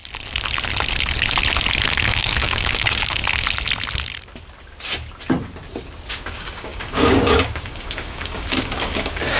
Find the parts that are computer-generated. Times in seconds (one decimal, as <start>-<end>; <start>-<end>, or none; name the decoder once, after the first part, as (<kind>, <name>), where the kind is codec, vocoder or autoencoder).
2.0-3.2 (codec, DAC); 6.1-9.4